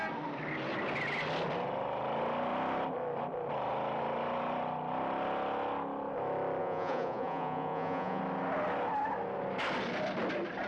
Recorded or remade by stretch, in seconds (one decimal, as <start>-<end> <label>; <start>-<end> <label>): 0.0-6.6 recorded; 6.6-8.2 remade; 8.2-10.7 recorded